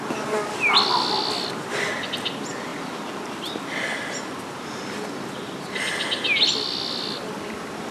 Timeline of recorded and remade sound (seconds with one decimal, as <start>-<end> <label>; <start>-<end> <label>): 0.0-7.9 recorded